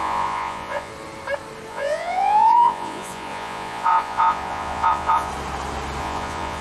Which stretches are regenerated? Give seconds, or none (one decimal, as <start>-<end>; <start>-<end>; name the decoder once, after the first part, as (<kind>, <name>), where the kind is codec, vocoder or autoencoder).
0.0-0.9 (vocoder, Vocos); 1.7-5.3; 6.0-6.6